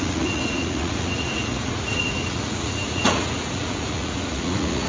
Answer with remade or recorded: remade